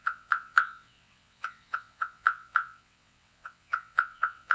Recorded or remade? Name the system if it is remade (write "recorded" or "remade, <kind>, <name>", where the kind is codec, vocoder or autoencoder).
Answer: remade, vocoder, WaveNeXt